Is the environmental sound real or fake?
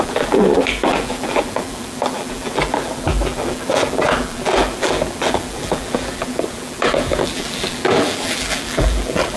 fake